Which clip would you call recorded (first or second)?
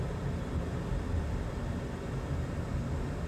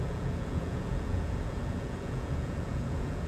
first